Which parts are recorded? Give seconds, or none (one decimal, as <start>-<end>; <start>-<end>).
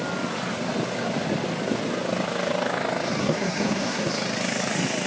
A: 0.0-3.2; 4.1-5.1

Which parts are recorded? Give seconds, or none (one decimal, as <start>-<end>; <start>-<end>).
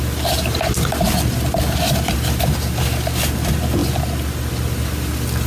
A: 0.0-5.5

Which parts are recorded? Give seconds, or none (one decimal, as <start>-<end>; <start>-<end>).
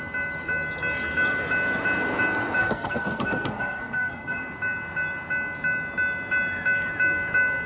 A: 0.0-2.6; 4.4-7.7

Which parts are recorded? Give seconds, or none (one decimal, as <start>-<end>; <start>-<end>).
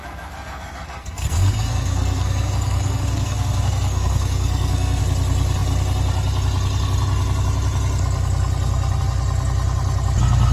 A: 5.0-10.5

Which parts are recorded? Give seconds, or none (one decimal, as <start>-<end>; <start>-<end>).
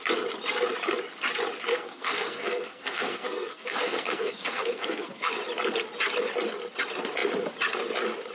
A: 0.0-1.7; 5.3-8.3